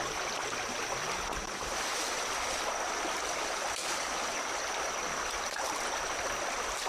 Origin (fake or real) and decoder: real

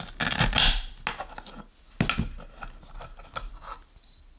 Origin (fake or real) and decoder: real